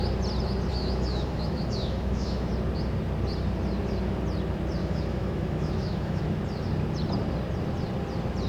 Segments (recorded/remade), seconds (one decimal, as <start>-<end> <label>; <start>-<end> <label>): 0.0-0.7 recorded; 0.7-2.5 remade; 2.5-4.8 recorded; 4.8-6.2 remade; 6.2-8.5 recorded

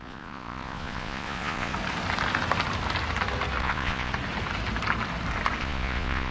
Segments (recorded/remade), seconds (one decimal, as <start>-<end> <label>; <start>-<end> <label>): 0.0-1.7 remade; 1.7-3.6 recorded; 3.6-4.1 remade; 4.1-5.6 recorded; 5.6-6.3 remade

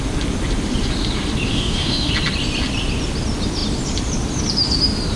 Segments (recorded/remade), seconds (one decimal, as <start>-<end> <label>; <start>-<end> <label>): 0.0-1.5 recorded; 1.5-2.1 remade; 2.1-5.2 recorded